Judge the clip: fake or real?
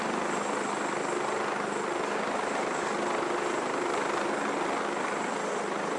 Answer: real